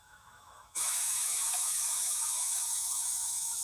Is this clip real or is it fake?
fake